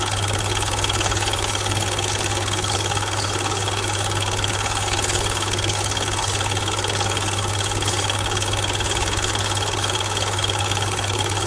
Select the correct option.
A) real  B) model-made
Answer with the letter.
B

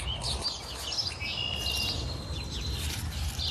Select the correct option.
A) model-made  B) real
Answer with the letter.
B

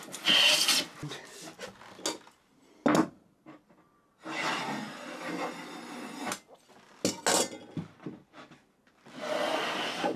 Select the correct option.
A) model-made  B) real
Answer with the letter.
B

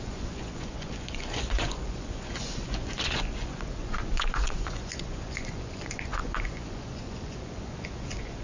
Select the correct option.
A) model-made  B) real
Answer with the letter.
A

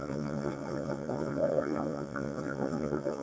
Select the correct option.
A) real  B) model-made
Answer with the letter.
B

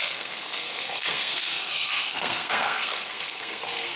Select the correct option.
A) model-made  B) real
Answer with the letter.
A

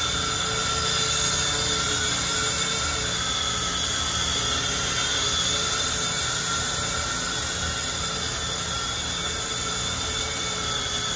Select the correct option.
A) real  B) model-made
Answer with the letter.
A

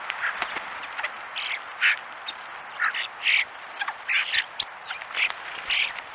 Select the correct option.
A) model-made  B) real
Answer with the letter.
B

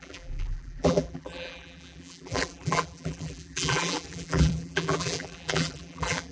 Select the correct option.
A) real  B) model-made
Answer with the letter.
B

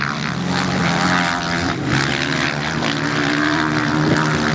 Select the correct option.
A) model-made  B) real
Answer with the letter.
B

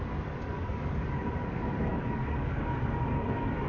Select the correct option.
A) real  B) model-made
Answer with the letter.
B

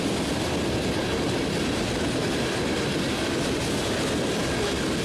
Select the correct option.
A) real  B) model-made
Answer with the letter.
A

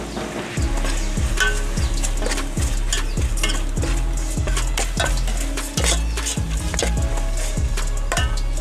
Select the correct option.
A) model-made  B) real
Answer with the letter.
B